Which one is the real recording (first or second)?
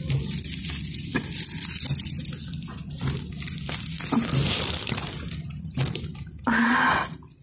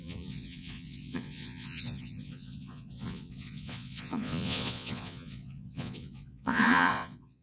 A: first